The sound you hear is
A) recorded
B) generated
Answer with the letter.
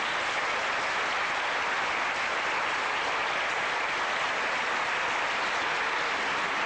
A